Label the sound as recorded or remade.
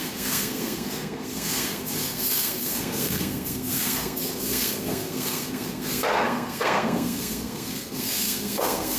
remade